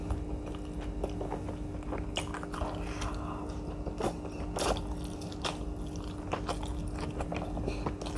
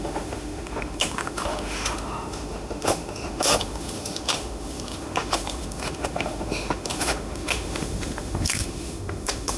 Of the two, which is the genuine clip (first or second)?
first